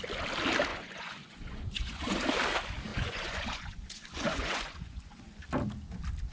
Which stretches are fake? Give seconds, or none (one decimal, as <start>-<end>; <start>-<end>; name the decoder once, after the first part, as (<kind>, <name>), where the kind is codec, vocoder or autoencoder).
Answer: 0.7-2.2 (vocoder, Vocos); 2.9-5.4